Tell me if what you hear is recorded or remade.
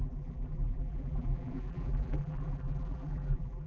remade